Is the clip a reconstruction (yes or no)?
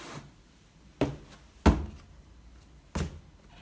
no